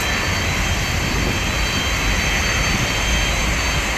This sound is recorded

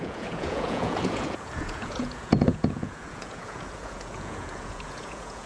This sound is remade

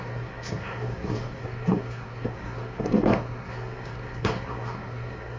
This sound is remade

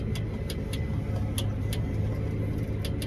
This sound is recorded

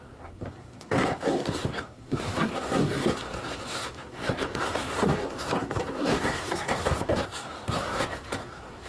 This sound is remade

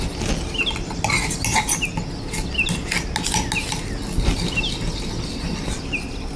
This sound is recorded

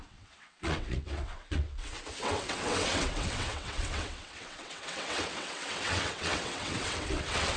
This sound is remade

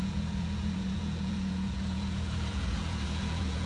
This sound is remade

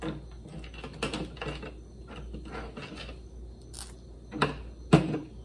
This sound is recorded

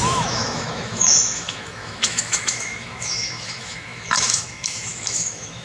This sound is remade